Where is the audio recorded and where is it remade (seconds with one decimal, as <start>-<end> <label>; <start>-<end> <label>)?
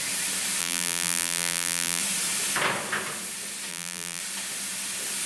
0.0-0.6 recorded; 0.6-2.0 remade; 2.0-3.7 recorded; 3.7-4.2 remade; 4.2-5.3 recorded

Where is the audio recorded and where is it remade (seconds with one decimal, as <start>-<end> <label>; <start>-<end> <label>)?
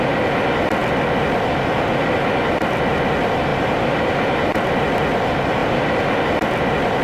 0.0-3.5 recorded; 3.5-4.7 remade; 4.7-5.6 recorded; 5.6-6.2 remade; 6.2-7.0 recorded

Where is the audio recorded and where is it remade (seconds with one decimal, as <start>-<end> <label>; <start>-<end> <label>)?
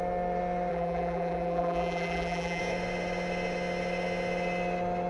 0.0-0.7 recorded; 0.7-2.6 remade; 2.6-5.1 recorded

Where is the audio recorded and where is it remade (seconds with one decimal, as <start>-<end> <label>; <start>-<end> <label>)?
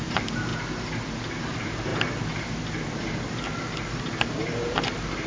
0.0-0.5 remade; 0.5-1.4 recorded; 1.4-1.9 remade; 1.9-4.0 recorded; 4.0-5.3 remade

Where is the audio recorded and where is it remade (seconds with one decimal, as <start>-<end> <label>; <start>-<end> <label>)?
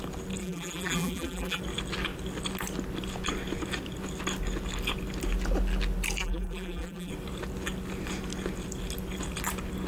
0.0-0.4 recorded; 0.4-1.6 remade; 1.6-6.2 recorded; 6.2-7.1 remade; 7.1-9.9 recorded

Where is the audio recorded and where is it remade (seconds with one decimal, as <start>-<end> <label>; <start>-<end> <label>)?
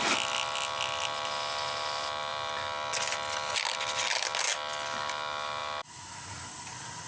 0.0-2.3 recorded; 2.3-2.9 remade; 2.9-7.1 recorded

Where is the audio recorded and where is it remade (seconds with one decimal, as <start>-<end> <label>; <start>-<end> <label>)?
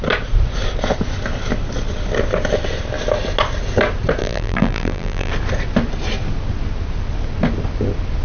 0.0-4.2 recorded; 4.2-5.3 remade; 5.3-8.2 recorded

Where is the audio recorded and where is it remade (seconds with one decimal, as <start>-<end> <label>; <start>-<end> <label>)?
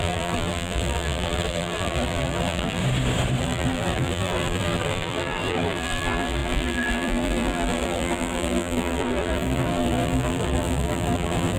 0.0-2.8 remade; 2.8-3.4 recorded; 3.4-11.6 remade